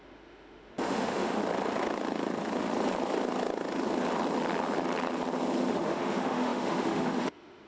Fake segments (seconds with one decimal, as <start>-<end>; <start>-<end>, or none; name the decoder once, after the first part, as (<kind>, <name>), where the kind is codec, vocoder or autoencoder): 0.0-1.4 (autoencoder, DAC-VAE); 5.7-7.7